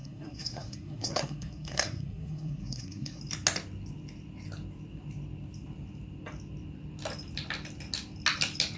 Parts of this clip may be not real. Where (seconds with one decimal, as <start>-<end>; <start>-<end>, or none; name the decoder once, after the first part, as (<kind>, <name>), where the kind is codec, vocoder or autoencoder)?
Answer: 0.0-3.2 (codec, SNAC)